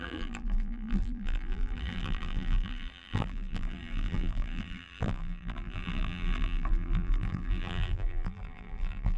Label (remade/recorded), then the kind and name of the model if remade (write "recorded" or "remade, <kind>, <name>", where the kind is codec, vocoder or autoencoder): remade, vocoder, BigVGAN v2